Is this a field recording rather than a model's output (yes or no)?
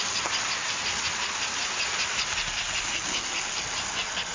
yes